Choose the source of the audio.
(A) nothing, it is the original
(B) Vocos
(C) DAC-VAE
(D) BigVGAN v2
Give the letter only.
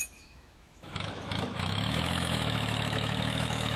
C